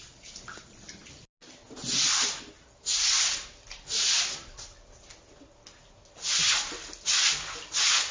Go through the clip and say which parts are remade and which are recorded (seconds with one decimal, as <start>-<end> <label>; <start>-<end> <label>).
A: 0.0-8.1 recorded